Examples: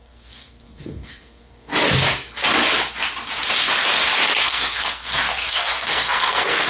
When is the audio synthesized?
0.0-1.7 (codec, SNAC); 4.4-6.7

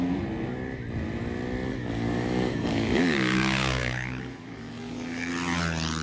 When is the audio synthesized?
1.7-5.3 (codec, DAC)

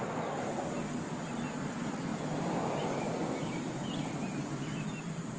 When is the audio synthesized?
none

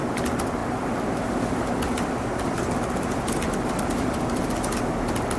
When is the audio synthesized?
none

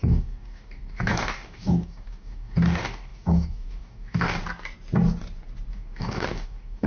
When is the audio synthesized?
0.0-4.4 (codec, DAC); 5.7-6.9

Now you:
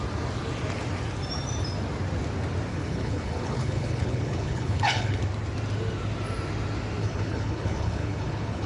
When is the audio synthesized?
2.7-5.2 (codec, HILCodec); 7.0-8.7

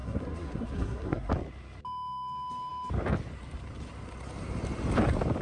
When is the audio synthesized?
0.0-1.3 (codec, SNAC)